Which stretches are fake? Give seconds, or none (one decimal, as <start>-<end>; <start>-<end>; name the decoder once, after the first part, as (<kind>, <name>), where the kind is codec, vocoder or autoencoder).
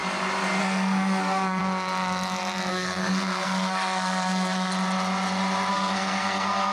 0.6-1.6 (codec, SNAC); 2.7-4.7; 5.7-6.7